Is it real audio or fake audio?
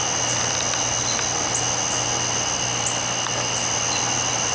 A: real